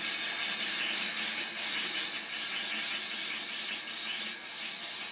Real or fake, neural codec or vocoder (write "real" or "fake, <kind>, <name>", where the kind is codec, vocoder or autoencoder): real